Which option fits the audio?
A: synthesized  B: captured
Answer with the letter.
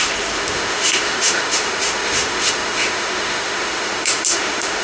A